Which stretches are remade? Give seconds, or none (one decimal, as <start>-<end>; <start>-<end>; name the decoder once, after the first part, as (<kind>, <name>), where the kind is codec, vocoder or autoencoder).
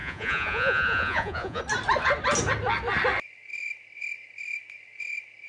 0.0-1.6 (vocoder, Vocos)